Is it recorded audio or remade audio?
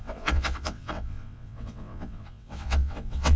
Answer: remade